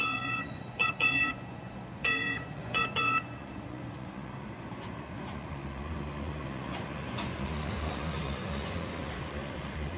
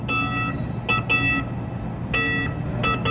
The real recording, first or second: second